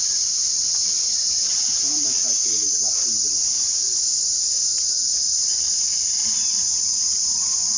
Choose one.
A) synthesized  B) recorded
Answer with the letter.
B